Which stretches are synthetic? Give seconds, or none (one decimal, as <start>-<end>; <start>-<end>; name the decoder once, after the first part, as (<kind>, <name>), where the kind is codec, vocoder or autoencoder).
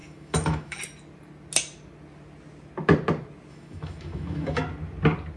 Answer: 0.0-0.8 (autoencoder, DAC-VAE); 3.5-4.6